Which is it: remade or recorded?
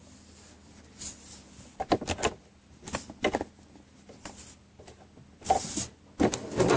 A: recorded